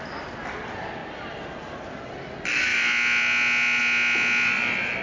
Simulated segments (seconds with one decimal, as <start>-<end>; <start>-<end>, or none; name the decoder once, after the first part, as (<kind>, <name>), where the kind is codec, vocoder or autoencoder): none